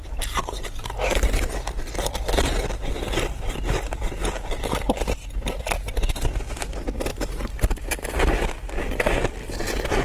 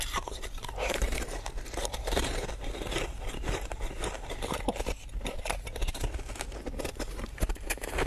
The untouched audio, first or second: first